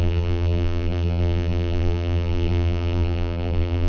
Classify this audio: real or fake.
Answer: fake